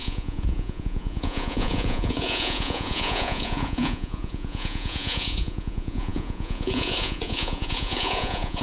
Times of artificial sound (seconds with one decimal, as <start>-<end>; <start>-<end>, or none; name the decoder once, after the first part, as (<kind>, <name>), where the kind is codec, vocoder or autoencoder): 0.0-8.6 (vocoder, Vocos)